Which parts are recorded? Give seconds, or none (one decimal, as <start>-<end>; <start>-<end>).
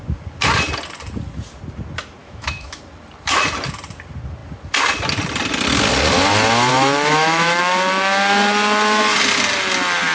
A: 0.0-2.2; 2.8-6.7; 7.6-10.1